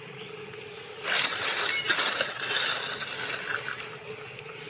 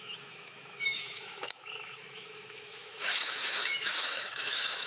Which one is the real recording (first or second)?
first